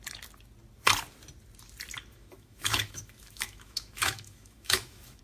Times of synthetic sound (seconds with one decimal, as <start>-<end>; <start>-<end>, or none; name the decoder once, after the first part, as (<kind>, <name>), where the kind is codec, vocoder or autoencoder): 2.1-5.2 (autoencoder, DAC-VAE)

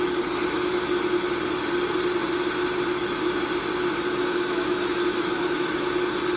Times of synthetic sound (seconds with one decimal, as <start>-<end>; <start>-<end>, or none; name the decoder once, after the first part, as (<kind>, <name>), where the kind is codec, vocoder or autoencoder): 4.2-5.8 (autoencoder, DAC-VAE)

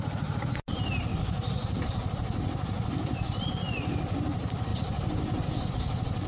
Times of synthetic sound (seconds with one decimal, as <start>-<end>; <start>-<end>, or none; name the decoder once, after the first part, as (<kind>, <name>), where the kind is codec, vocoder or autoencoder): none

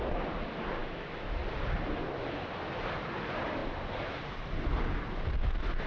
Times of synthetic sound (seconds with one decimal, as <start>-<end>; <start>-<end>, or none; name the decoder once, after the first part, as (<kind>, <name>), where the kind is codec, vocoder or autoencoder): 0.8-1.4 (autoencoder, DAC-VAE)

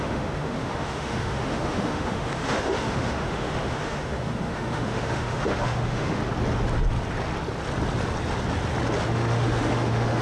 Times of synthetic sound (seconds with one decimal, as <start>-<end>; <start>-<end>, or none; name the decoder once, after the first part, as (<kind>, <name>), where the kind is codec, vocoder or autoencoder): 0.0-6.2 (autoencoder, DAC-VAE); 9.1-10.2

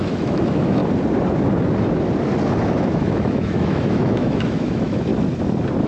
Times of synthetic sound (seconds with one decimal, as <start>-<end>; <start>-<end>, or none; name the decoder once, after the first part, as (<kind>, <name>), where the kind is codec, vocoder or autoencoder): 0.0-0.8 (autoencoder, DAC-VAE); 2.6-5.1

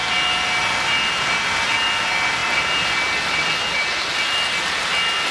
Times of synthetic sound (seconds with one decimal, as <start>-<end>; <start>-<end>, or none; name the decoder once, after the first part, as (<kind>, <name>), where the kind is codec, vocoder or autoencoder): none

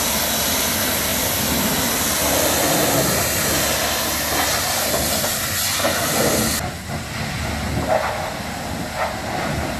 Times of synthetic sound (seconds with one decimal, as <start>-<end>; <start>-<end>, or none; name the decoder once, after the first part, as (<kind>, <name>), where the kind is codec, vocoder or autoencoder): none